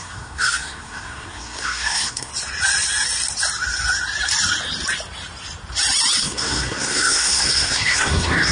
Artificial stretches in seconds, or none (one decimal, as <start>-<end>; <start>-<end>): 0.0-2.3; 6.2-8.5